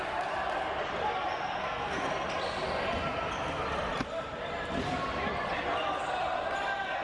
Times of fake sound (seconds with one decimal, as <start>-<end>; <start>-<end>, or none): 1.6-2.1